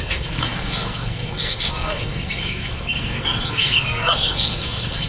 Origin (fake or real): fake